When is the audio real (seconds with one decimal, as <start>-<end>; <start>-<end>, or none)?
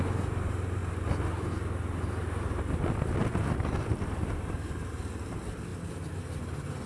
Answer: 0.0-6.9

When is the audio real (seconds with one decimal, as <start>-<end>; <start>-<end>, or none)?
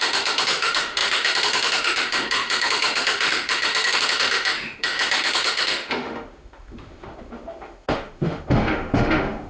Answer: none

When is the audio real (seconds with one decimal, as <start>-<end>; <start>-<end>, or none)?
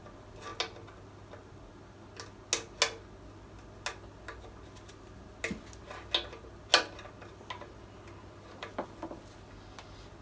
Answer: 0.0-10.2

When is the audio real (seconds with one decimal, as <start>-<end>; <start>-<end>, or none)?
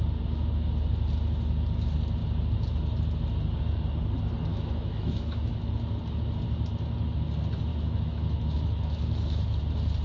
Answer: 0.0-4.5; 5.7-7.7; 9.6-10.0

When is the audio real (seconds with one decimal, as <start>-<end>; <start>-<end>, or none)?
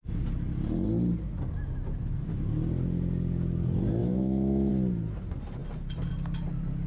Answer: 0.0-4.0; 4.7-6.9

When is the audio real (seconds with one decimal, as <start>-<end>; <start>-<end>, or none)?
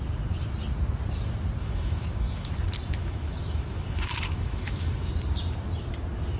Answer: 0.0-1.6; 2.5-3.0; 5.1-6.4